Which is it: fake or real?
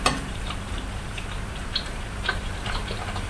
fake